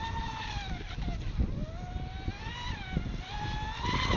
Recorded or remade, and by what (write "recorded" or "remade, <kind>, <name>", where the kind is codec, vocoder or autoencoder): recorded